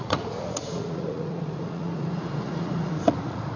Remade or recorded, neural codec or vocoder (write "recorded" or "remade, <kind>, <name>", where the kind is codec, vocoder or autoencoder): remade, vocoder, Vocos